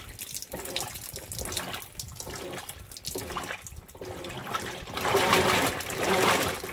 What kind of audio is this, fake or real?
real